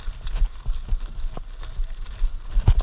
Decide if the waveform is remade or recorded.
recorded